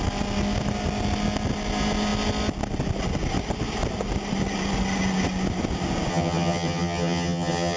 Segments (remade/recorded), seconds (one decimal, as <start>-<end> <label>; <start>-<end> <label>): 0.0-6.1 recorded; 6.1-7.8 remade